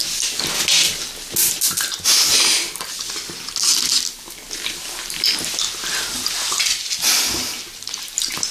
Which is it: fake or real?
real